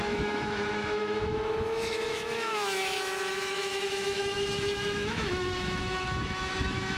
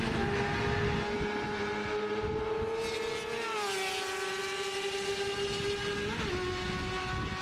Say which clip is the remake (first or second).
first